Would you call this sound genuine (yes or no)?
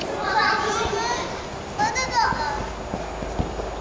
yes